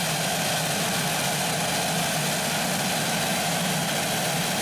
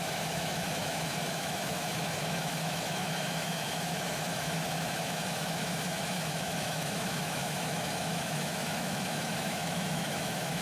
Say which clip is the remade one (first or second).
second